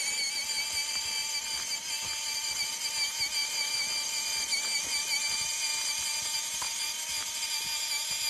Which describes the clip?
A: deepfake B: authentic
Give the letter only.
B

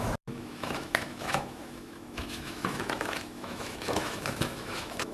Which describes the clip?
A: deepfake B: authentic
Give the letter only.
A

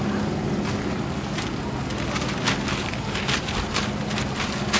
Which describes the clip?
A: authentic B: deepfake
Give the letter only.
A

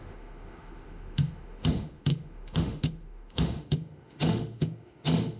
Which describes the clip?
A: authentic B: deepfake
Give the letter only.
B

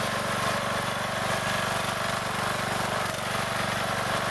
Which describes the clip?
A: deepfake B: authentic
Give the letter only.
B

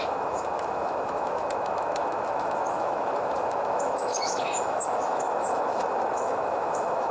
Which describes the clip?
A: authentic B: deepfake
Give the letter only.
B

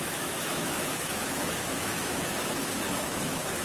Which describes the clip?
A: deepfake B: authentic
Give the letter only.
A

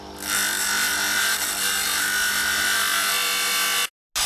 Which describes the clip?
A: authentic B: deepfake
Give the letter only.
A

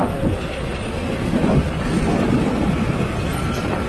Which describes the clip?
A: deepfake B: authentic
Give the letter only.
B